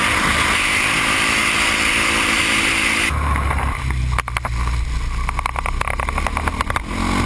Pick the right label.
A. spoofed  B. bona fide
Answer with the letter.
B